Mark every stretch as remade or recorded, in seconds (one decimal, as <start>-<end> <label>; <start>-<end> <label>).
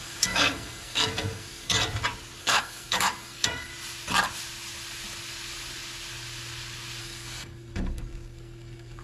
0.0-1.7 remade; 1.7-2.4 recorded; 2.4-3.7 remade; 3.7-7.0 recorded; 7.0-9.0 remade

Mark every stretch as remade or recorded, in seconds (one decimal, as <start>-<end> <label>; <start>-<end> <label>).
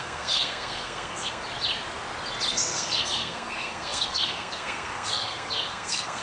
0.0-1.4 remade; 1.4-2.5 recorded; 2.5-6.2 remade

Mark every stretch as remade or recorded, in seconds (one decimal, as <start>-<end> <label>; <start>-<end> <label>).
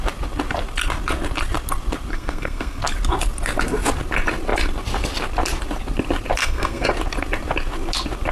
0.0-2.1 recorded; 2.1-2.8 remade; 2.8-6.4 recorded; 6.4-6.9 remade; 6.9-8.3 recorded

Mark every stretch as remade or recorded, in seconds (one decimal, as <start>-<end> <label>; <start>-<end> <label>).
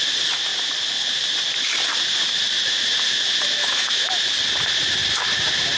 0.0-3.6 recorded; 3.6-4.2 remade; 4.2-5.8 recorded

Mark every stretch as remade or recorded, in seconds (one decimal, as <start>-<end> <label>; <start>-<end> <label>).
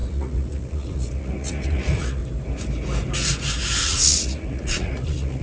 0.0-2.2 remade; 2.2-3.8 recorded; 3.8-5.4 remade